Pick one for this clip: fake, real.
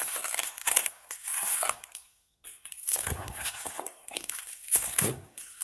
fake